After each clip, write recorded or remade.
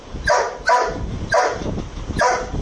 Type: recorded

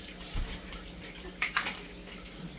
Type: recorded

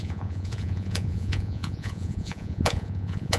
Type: remade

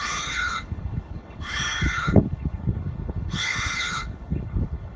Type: remade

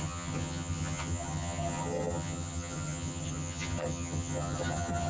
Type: remade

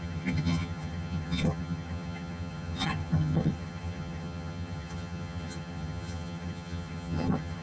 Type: remade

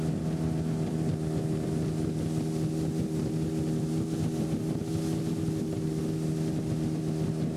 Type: recorded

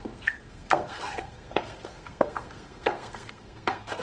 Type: remade